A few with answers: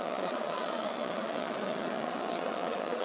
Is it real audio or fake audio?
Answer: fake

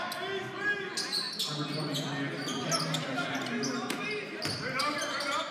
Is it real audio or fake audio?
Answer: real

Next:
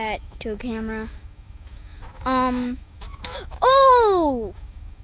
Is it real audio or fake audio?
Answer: fake